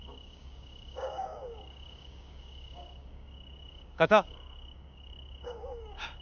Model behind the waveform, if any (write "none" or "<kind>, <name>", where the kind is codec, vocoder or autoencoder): codec, DAC